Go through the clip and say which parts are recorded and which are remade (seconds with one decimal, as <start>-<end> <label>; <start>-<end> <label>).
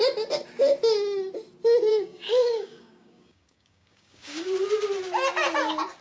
0.0-1.9 recorded; 1.9-4.5 remade; 4.5-6.0 recorded